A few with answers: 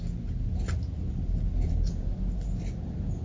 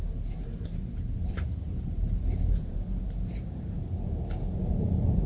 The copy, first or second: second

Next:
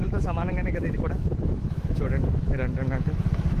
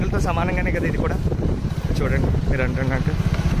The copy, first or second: first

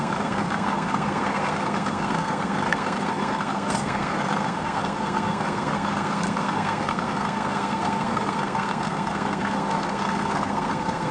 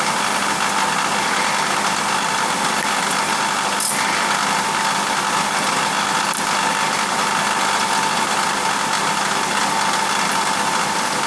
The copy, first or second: first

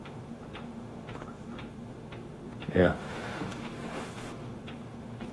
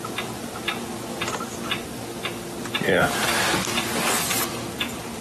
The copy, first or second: first